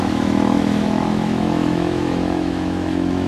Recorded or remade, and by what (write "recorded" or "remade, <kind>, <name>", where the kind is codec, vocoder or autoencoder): remade, autoencoder, DAC-VAE